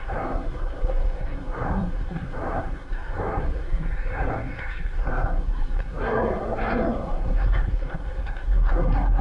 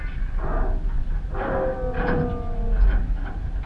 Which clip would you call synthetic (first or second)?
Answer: first